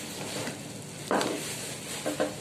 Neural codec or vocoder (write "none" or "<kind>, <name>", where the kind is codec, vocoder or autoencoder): none